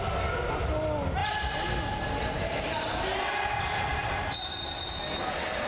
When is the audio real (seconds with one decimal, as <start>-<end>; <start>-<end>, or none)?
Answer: 0.0-5.7